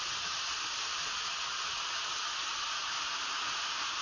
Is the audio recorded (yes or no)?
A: yes